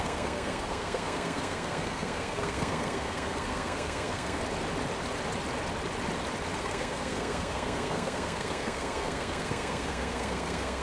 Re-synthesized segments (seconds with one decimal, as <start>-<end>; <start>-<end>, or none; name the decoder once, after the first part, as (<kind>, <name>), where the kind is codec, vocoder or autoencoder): 0.0-4.4 (codec, SNAC); 6.6-10.8